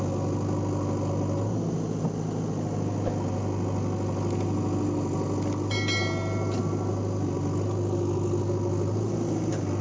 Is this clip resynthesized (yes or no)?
no